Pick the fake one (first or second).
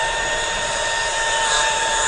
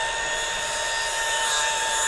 first